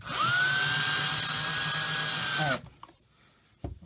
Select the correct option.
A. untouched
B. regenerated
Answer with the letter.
A